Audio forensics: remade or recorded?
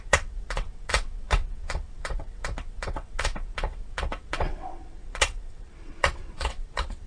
remade